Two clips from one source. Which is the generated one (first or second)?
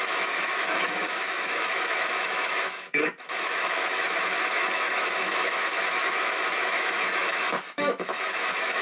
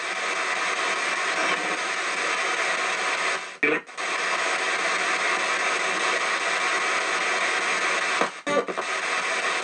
first